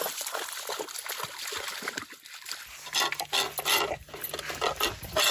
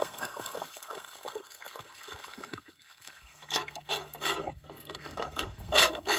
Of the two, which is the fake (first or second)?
second